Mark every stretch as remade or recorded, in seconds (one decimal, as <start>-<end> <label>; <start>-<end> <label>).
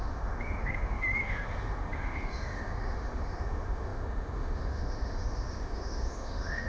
0.0-6.7 remade